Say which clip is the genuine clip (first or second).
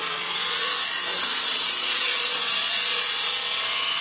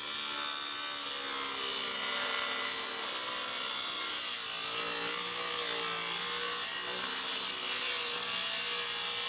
second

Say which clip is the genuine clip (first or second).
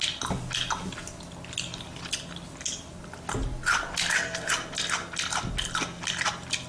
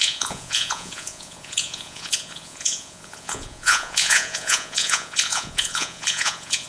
first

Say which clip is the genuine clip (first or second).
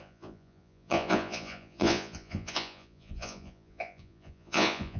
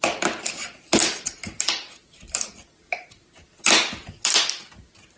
second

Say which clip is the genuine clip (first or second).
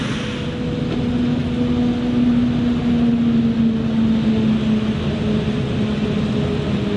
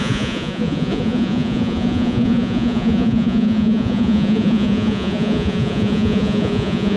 first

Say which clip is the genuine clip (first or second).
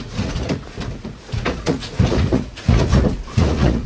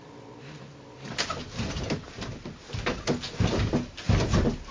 second